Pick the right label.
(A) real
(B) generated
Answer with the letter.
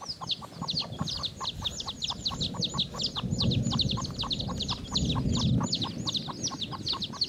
A